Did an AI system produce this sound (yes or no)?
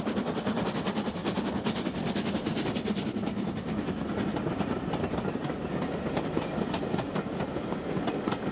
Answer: no